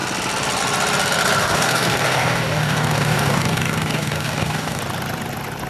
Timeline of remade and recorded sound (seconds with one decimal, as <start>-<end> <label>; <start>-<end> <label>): 0.0-1.4 recorded; 1.4-4.8 remade; 4.8-5.7 recorded